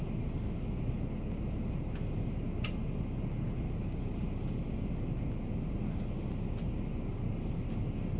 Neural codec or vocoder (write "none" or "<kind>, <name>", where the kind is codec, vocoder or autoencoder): none